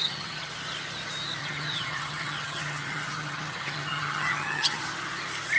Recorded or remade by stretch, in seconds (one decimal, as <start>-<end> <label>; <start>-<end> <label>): 0.0-0.5 remade; 0.5-1.4 recorded; 1.4-4.8 remade; 4.8-5.6 recorded

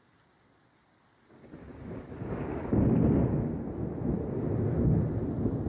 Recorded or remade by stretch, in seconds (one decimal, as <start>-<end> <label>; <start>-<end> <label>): 0.0-1.7 remade; 1.7-3.7 recorded; 3.7-5.7 remade

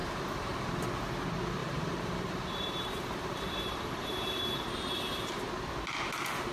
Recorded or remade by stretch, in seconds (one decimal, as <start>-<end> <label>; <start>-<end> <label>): 0.0-0.9 remade; 0.9-1.6 recorded; 1.6-5.5 remade; 5.5-6.5 recorded

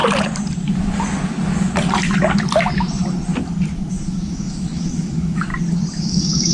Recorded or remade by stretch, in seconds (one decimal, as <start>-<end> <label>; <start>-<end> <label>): 0.0-3.9 recorded; 3.9-5.5 remade; 5.5-6.0 recorded; 6.0-6.5 remade